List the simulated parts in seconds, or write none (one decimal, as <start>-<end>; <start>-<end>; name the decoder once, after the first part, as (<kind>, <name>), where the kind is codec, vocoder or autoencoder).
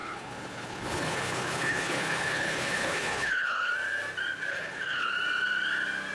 0.0-3.7 (codec, HILCodec); 4.5-5.1